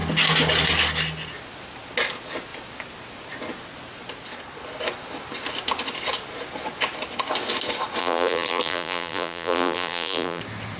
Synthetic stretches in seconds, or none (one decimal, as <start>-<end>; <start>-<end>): 8.0-10.4